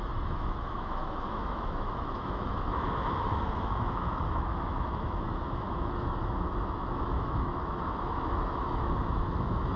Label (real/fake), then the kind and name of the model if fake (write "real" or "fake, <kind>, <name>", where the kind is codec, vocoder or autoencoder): fake, autoencoder, DAC-VAE